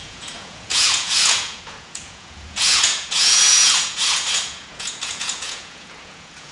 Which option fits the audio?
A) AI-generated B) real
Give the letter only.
A